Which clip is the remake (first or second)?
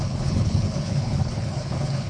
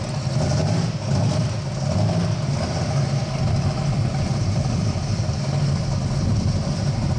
first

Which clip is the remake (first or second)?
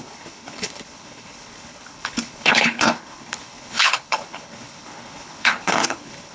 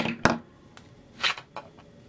first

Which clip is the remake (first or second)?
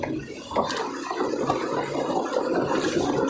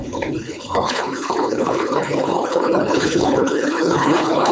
second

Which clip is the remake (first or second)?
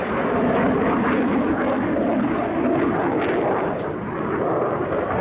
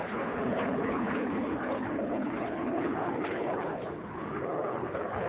second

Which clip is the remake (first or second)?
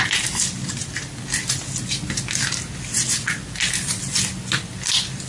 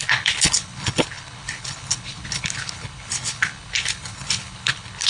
second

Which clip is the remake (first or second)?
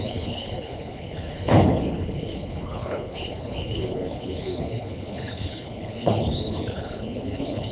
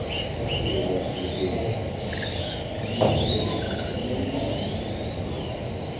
first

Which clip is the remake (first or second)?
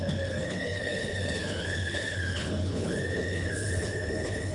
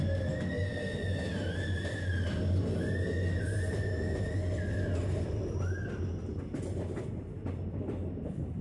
first